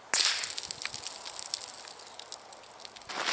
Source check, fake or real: real